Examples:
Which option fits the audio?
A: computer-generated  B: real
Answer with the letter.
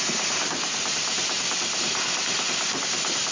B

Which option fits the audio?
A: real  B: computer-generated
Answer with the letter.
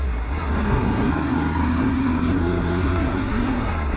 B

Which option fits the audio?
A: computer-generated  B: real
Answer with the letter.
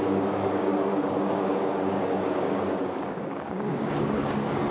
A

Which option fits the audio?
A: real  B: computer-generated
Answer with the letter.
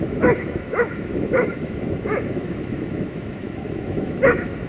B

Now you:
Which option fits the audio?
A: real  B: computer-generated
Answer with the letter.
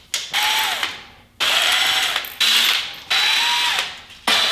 A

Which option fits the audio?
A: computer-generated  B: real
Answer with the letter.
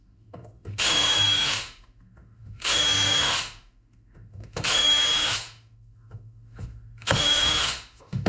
A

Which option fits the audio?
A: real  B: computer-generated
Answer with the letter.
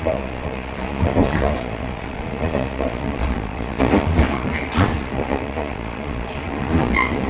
B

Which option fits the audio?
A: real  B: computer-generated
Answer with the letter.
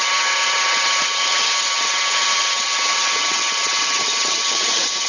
B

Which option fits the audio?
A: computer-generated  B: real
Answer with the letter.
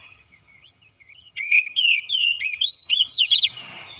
A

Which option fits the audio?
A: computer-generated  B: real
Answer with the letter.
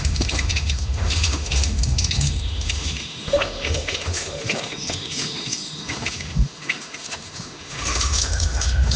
A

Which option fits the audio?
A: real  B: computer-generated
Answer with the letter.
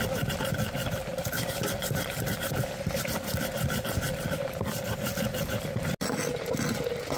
A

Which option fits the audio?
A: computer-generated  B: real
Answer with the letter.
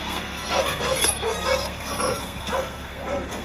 A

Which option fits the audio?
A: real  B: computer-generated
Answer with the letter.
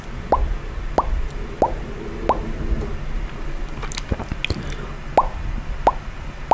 A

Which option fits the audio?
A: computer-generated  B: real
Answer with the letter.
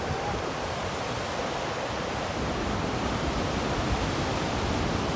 B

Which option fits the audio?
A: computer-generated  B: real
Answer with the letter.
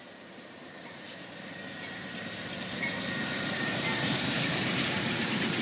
A